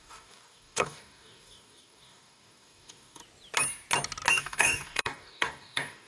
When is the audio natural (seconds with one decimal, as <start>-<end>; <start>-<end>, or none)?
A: 3.2-4.3